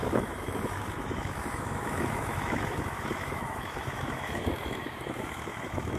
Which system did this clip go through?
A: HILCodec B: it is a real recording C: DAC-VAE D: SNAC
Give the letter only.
C